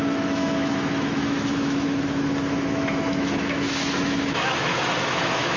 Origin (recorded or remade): remade